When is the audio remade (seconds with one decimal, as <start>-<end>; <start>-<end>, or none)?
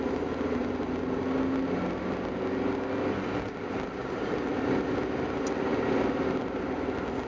none